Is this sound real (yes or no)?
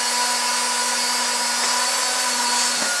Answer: yes